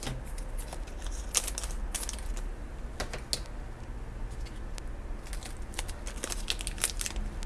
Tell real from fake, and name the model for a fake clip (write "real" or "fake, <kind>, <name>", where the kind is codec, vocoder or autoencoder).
real